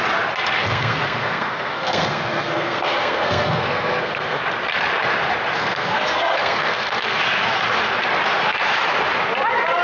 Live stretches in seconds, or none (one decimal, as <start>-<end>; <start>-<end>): 0.0-0.6; 4.4-5.6; 7.2-9.8